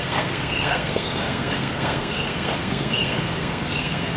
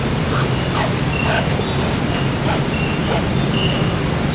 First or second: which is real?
second